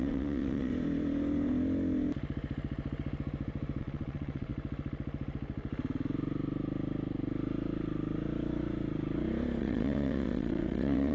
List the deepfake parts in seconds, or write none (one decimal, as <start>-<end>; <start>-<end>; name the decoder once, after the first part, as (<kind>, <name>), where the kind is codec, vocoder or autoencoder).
0.0-0.7 (vocoder, WaveNeXt); 3.8-4.5; 9.6-11.1